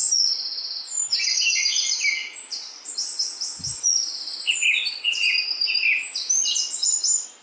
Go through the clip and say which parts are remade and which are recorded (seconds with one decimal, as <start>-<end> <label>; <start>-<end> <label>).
0.0-7.4 recorded